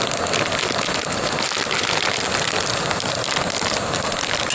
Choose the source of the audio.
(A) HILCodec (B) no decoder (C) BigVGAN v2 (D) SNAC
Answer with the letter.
B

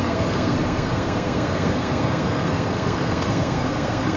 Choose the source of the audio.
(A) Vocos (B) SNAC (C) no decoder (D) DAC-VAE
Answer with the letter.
B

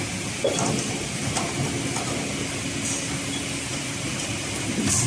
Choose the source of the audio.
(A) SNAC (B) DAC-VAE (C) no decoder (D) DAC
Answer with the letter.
C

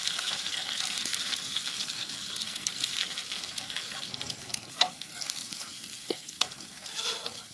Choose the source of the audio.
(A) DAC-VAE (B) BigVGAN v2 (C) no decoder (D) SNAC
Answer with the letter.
D